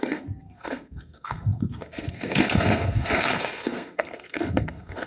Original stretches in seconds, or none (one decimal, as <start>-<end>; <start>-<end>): none